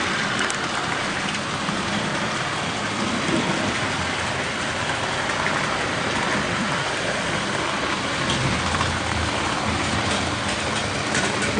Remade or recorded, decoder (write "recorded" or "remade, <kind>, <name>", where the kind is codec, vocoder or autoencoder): recorded